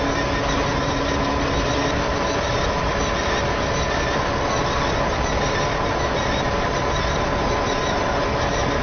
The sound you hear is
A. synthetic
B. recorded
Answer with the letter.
B